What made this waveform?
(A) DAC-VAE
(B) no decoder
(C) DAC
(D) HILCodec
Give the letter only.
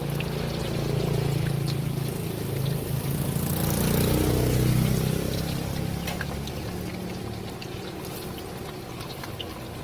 B